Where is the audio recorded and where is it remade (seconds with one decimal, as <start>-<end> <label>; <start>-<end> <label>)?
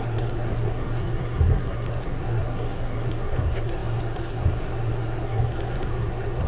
0.0-6.5 remade